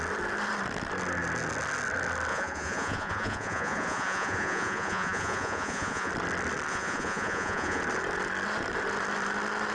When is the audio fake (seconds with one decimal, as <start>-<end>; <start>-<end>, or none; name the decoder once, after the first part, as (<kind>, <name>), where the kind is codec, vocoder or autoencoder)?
2.3-6.1 (vocoder, Vocos); 6.7-7.8